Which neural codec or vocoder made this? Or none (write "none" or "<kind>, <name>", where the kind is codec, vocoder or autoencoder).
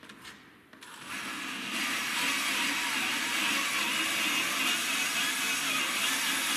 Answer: none